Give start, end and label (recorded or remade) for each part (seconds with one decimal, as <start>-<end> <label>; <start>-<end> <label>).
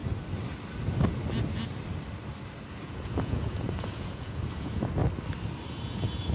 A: 0.0-2.7 recorded; 2.7-5.0 remade; 5.0-5.7 recorded; 5.7-6.3 remade